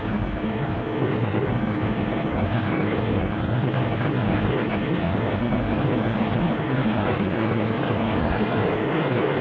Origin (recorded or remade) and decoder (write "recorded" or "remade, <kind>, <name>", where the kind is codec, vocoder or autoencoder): remade, codec, SNAC